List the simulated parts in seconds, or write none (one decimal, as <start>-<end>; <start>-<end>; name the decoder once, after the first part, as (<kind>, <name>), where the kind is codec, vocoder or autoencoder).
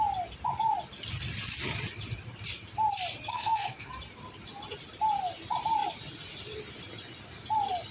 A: 3.3-3.9 (codec, SNAC)